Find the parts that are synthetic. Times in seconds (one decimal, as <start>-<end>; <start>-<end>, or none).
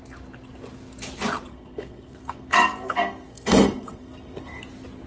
1.5-4.6